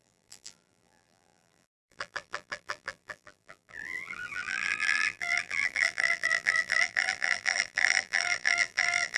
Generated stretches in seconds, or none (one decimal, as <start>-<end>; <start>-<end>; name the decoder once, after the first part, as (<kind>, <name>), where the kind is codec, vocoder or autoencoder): 0.0-9.2 (vocoder, BigVGAN v2)